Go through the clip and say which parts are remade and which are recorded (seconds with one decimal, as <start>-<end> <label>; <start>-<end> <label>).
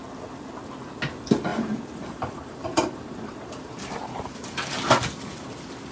0.0-1.5 recorded; 1.5-5.0 remade; 5.0-5.9 recorded